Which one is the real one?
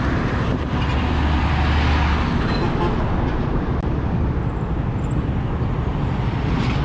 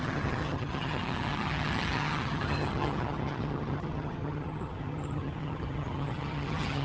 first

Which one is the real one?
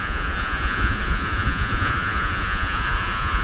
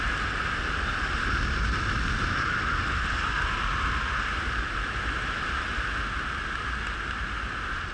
second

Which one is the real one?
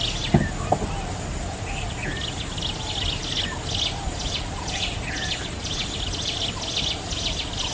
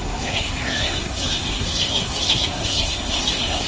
first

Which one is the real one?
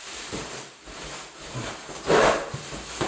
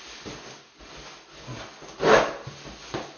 second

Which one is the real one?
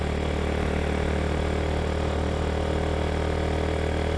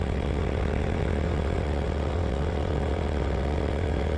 first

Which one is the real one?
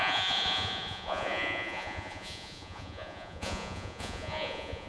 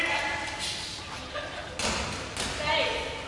second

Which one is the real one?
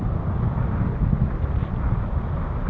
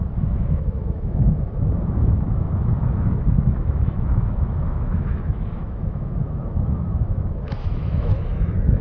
first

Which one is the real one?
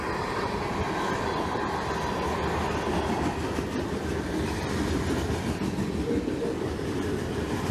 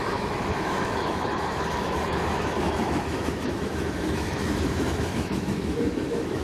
first